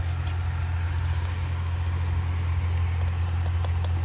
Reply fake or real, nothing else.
real